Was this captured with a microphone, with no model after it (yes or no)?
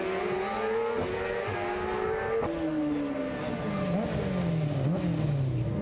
yes